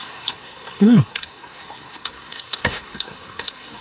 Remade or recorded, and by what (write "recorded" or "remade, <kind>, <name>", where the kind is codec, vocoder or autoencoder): remade, codec, SNAC